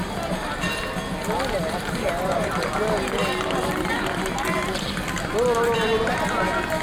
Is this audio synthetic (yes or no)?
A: no